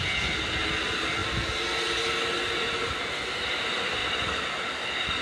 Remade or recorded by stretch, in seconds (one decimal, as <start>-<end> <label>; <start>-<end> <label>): 0.0-5.2 recorded